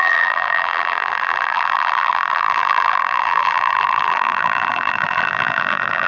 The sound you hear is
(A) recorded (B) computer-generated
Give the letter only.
B